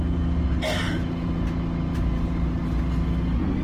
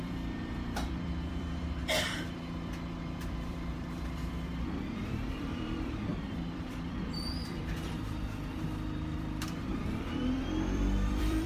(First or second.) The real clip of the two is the first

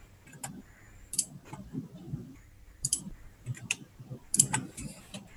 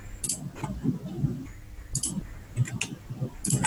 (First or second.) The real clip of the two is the second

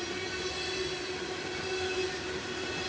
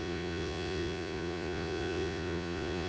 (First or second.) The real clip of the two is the first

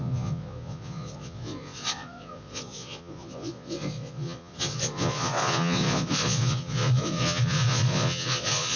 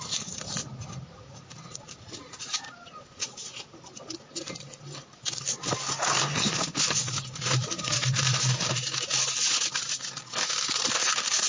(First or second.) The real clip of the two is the second